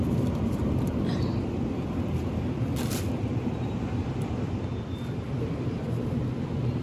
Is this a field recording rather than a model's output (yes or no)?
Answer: no